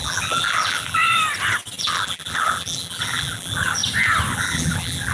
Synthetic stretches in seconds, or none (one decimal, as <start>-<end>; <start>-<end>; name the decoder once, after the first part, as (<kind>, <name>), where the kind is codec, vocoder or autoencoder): 0.0-1.0 (vocoder, BigVGAN v2); 1.8-3.8; 4.3-5.1

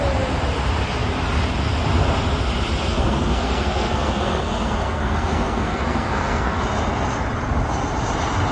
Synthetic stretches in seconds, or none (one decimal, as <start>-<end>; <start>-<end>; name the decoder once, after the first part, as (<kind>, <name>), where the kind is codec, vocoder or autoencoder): 2.9-6.6 (codec, SNAC)

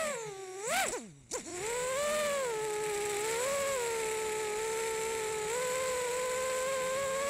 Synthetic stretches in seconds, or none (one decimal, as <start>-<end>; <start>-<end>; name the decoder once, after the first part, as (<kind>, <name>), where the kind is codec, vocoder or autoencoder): none

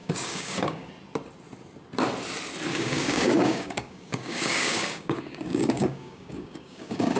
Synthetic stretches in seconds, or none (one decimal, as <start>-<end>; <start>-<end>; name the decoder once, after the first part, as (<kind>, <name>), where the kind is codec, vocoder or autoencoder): 0.0-0.9 (codec, DAC); 2.7-7.2

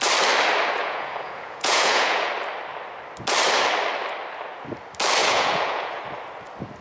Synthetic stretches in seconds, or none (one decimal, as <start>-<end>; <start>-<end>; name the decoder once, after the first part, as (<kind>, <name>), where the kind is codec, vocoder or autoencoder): 0.8-2.3 (vocoder, Vocos); 5.2-6.0

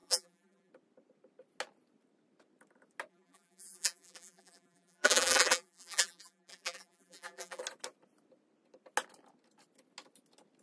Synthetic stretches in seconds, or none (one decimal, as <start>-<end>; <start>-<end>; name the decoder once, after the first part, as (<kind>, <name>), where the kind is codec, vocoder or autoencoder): 0.0-0.7 (vocoder, BigVGAN v2); 3.1-7.6

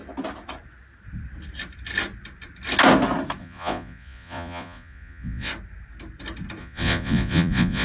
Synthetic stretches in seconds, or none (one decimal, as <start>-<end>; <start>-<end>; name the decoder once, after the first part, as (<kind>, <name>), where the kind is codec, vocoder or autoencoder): 3.4-5.5 (vocoder, Vocos); 6.6-7.8

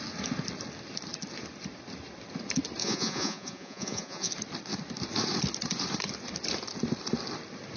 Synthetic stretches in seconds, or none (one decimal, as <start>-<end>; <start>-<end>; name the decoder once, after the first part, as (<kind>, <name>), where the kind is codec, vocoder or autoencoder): 2.8-4.3 (vocoder, Vocos)